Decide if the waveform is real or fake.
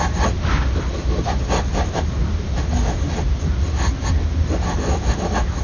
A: real